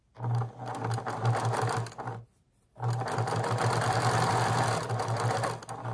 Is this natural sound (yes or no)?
yes